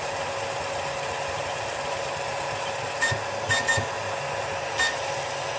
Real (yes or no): yes